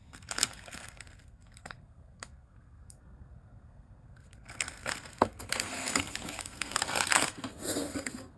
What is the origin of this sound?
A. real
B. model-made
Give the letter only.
B